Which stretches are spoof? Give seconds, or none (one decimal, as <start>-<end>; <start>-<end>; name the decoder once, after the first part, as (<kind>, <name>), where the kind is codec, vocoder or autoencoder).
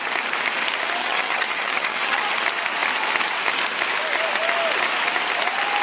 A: 1.0-2.2 (vocoder, HiFi-GAN)